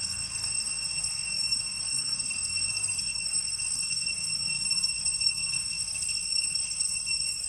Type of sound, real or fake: fake